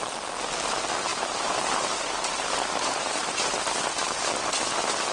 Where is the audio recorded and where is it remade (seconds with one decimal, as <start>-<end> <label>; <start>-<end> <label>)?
0.0-1.1 recorded; 1.1-4.2 remade; 4.2-5.1 recorded